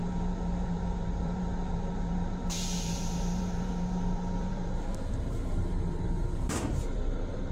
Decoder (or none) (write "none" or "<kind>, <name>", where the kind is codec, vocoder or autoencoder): vocoder, BigVGAN v2